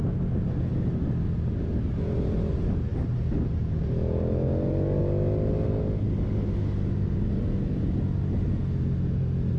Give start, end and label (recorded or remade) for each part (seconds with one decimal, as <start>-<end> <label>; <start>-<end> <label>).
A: 0.0-9.6 recorded